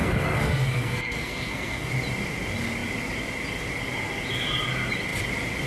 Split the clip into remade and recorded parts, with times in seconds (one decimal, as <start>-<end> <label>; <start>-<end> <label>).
0.0-1.9 remade; 1.9-5.7 recorded